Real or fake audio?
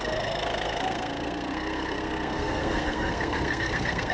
fake